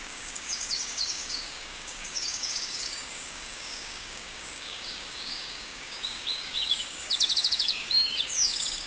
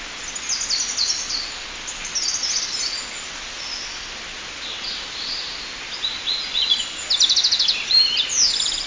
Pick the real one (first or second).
second